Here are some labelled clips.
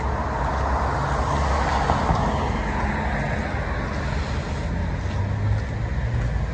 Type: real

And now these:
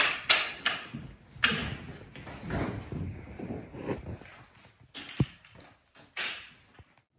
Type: real